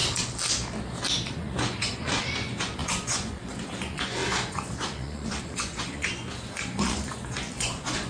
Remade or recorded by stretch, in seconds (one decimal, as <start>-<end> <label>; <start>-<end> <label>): 0.0-1.3 recorded; 1.3-8.1 remade